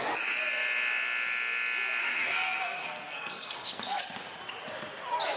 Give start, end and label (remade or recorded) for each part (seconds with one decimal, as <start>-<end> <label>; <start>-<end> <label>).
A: 0.0-2.0 recorded; 2.0-4.0 remade; 4.0-5.4 recorded